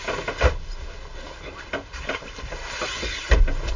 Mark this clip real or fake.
real